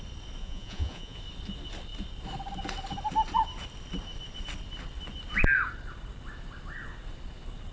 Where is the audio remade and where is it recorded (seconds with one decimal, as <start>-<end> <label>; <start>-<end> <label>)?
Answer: 0.0-0.4 recorded; 0.4-1.2 remade; 1.2-7.7 recorded